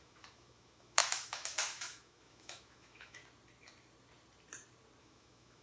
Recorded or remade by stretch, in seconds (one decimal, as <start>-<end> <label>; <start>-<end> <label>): 0.0-3.2 remade; 3.2-5.0 recorded; 5.0-5.6 remade